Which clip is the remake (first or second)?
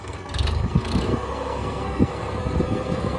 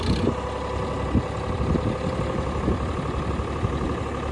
first